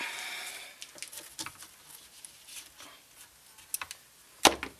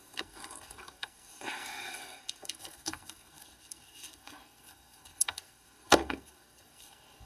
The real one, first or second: first